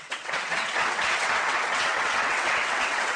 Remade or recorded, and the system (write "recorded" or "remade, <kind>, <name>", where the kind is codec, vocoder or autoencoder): remade, vocoder, WaveNeXt